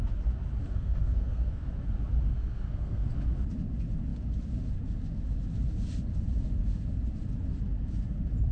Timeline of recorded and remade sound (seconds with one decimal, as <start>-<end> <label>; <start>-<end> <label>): 0.0-0.7 recorded; 0.7-1.7 remade; 1.7-2.3 recorded; 2.3-3.1 remade; 3.1-8.5 recorded